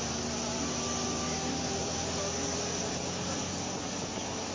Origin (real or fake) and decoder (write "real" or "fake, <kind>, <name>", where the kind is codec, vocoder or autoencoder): real